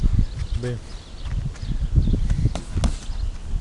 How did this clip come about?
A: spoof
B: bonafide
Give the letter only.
B